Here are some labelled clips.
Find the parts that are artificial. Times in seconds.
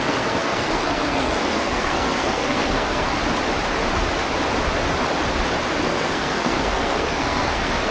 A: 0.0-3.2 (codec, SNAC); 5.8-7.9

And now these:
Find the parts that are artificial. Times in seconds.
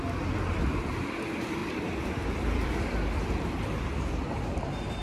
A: 1.6-4.6 (vocoder, BigVGAN v2)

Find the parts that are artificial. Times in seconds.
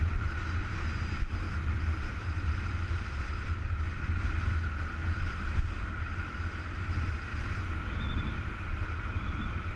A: none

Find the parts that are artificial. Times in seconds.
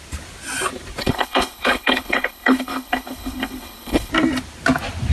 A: 1.0-4.1 (codec, HILCodec)